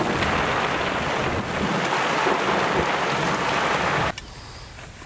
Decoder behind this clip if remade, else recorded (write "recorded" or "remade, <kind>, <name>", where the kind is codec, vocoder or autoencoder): recorded